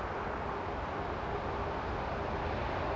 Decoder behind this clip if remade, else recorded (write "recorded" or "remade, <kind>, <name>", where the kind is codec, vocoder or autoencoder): recorded